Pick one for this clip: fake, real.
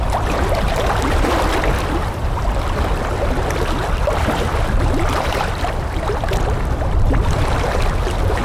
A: fake